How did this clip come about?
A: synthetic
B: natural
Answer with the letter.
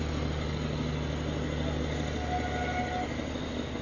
B